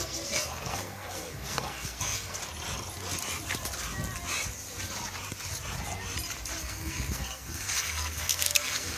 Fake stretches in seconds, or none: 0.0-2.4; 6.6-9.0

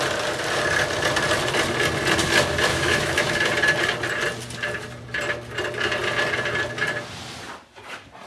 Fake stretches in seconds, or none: 2.7-3.5

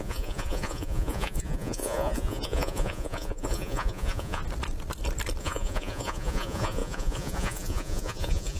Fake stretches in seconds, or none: 0.0-4.4; 5.4-8.6

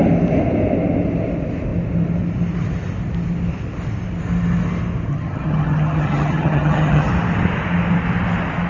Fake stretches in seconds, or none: 5.1-7.1